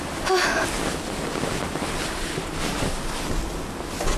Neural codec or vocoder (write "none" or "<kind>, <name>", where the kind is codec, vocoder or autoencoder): none